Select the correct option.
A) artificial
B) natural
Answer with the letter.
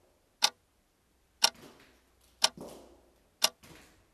B